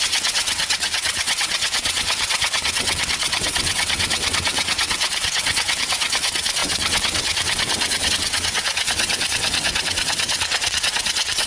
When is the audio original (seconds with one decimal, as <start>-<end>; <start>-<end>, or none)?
none